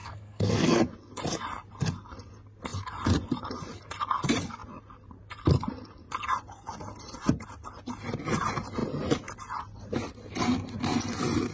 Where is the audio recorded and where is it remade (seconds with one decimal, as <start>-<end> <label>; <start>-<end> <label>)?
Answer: 0.0-0.8 remade; 0.8-11.5 recorded